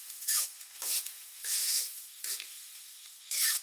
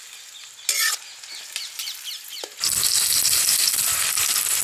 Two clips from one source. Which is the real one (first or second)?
second